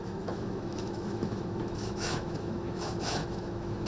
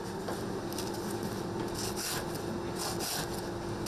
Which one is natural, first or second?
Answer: second